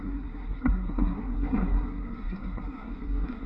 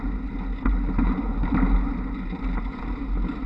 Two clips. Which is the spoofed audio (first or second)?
first